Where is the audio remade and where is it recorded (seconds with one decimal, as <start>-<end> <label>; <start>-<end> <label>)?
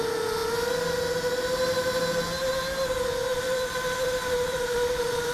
0.0-3.3 recorded; 3.3-5.3 remade